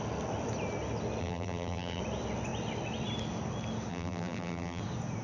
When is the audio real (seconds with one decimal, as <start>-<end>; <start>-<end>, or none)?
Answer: 0.0-1.2; 2.0-3.9; 4.8-5.2